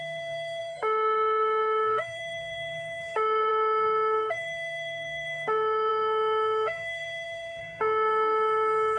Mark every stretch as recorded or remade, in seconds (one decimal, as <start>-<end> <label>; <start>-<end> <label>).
0.0-9.0 remade